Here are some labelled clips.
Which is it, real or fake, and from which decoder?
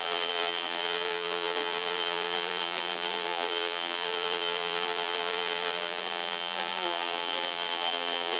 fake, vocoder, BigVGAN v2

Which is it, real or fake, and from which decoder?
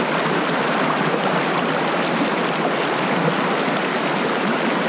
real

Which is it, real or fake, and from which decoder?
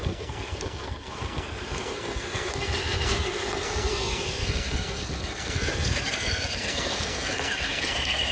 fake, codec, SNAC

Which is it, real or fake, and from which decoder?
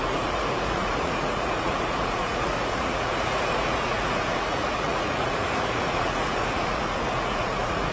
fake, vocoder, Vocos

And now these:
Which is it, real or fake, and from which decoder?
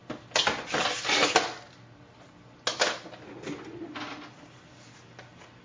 real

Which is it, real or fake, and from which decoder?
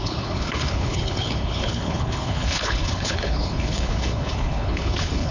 fake, codec, HILCodec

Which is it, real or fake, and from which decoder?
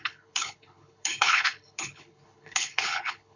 fake, codec, HILCodec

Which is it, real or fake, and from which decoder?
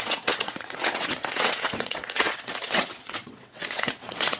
fake, vocoder, WaveNeXt